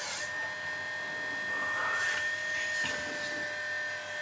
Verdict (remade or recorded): recorded